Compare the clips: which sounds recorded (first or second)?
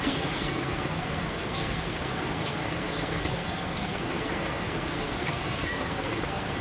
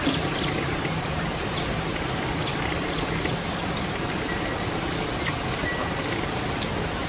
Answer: second